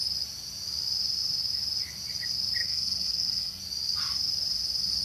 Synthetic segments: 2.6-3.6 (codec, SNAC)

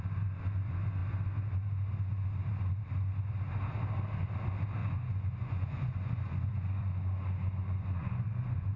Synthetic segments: 4.8-8.8 (vocoder, Vocos)

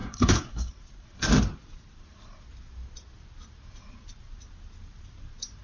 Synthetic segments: 0.0-0.7 (codec, SNAC)

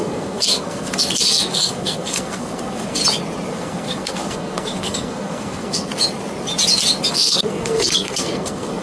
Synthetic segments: 0.0-3.0 (codec, SNAC); 3.5-5.9; 7.1-8.8

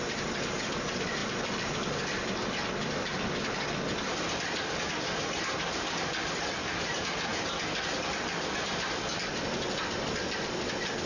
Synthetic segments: none

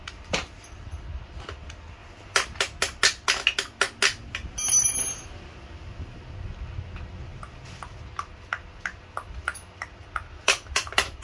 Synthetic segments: 2.0-2.6 (vocoder, BigVGAN v2); 10.0-11.2